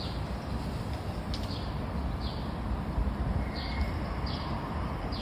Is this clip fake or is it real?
real